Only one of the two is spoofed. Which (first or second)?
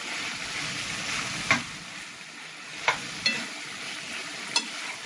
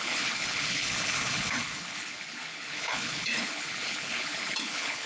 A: second